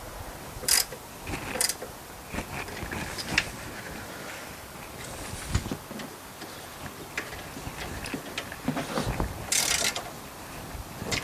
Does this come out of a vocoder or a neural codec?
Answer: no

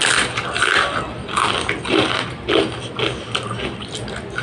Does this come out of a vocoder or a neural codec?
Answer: no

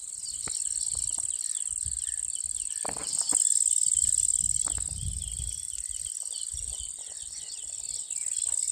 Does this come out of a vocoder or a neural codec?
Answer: no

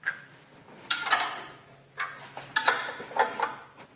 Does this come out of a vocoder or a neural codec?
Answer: no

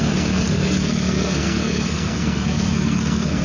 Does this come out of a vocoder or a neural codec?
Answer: yes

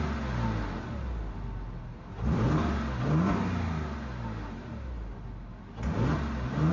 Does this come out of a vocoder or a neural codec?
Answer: no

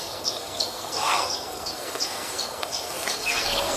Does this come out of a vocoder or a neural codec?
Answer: yes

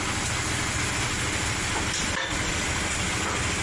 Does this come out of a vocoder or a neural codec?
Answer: no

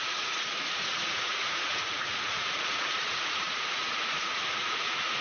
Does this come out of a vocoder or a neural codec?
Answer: yes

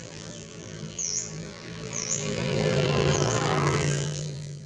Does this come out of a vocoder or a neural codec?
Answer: yes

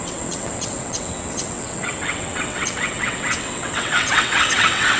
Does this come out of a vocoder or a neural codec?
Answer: yes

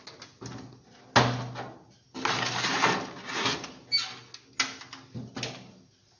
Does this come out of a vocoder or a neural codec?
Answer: no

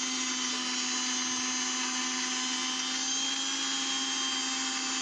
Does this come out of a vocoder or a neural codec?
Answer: no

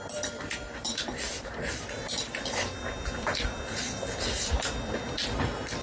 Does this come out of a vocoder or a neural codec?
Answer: yes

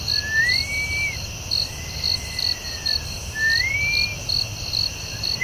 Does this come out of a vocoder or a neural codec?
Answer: no